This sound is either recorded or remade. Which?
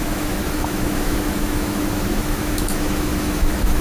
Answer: remade